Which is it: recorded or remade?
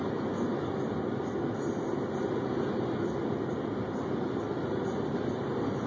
recorded